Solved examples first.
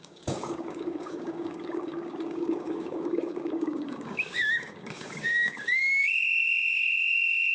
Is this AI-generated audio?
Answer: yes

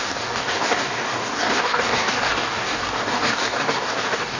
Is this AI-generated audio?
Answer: yes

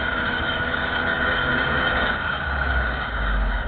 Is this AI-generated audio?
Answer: yes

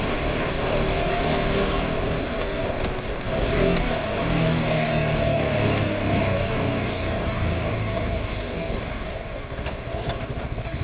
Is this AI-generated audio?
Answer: yes